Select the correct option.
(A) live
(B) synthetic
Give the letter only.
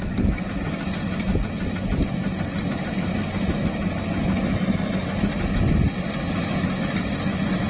A